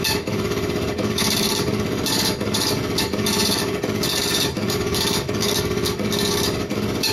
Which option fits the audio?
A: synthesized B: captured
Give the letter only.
A